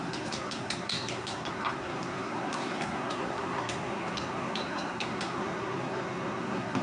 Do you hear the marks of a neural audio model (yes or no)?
yes